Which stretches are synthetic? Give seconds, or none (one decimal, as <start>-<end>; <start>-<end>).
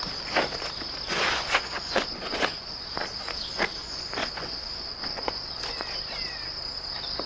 1.1-2.9; 3.8-5.7